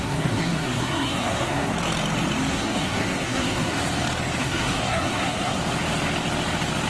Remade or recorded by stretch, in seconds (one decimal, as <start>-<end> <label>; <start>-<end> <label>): 0.0-1.7 remade; 1.7-2.5 recorded; 2.5-3.8 remade; 3.8-4.4 recorded; 4.4-5.6 remade; 5.6-6.9 recorded